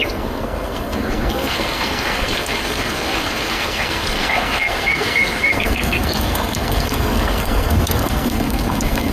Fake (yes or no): yes